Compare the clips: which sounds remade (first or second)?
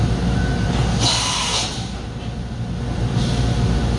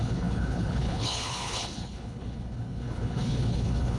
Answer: second